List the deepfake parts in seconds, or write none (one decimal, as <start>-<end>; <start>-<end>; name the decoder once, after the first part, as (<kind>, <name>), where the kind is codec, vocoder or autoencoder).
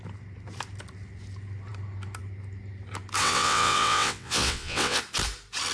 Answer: 3.2-5.0 (vocoder, WaveNeXt)